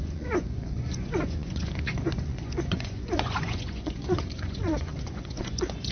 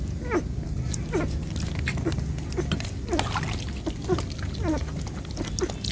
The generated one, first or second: first